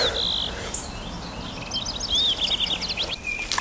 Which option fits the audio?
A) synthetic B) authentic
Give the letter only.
B